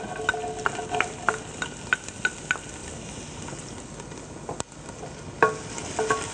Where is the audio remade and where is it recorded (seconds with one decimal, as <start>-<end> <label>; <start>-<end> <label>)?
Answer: 0.0-6.3 recorded

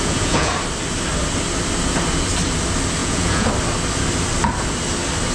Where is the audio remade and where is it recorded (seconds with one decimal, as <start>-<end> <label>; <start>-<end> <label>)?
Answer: 0.0-0.5 remade; 0.5-3.0 recorded; 3.0-3.5 remade; 3.5-5.3 recorded

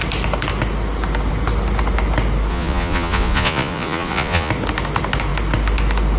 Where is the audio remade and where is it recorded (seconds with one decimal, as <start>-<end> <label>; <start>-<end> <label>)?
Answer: 0.0-2.5 recorded; 2.5-4.5 remade; 4.5-6.2 recorded

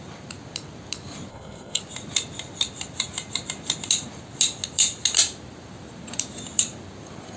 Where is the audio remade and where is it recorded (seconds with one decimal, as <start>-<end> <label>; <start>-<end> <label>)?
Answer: 0.0-1.3 recorded; 1.3-1.8 remade; 1.8-7.4 recorded

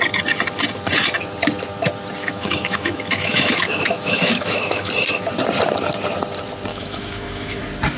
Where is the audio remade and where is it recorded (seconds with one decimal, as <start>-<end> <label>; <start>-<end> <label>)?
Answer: 0.0-2.2 recorded; 2.2-4.9 remade; 4.9-6.7 recorded; 6.7-7.6 remade; 7.6-8.0 recorded

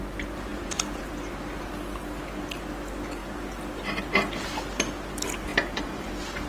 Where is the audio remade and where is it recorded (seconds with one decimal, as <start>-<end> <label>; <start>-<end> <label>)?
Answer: 0.0-5.5 recorded; 5.5-6.1 remade; 6.1-6.5 recorded

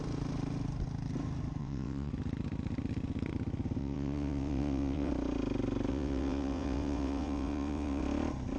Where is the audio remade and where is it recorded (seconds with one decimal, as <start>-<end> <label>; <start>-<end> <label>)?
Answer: 0.0-1.6 recorded; 1.6-2.1 remade; 2.1-3.8 recorded; 3.8-5.1 remade; 5.1-5.9 recorded; 5.9-8.0 remade; 8.0-8.6 recorded

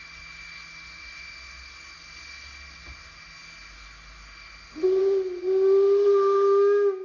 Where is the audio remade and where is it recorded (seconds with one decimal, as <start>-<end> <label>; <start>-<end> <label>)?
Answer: 0.0-7.0 recorded